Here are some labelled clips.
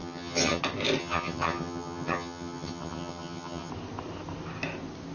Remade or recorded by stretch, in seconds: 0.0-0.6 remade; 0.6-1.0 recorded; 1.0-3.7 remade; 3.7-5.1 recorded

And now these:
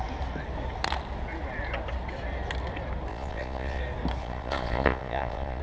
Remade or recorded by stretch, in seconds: 0.0-3.1 recorded; 3.1-3.8 remade; 3.8-4.2 recorded; 4.2-5.6 remade

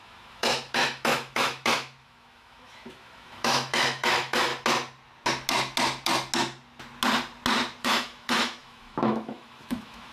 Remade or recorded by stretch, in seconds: 0.0-4.5 remade; 4.5-7.8 recorded; 7.8-10.1 remade

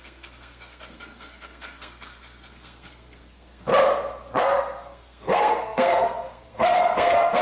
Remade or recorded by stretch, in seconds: 0.0-3.7 remade; 3.7-4.4 recorded; 4.4-7.4 remade

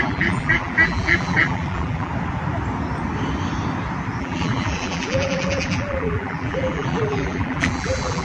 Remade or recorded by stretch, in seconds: 0.0-2.1 remade; 2.1-4.2 recorded; 4.2-8.2 remade